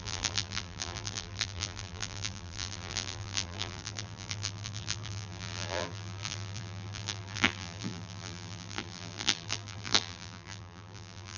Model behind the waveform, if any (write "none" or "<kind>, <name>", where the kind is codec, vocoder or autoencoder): vocoder, BigVGAN v2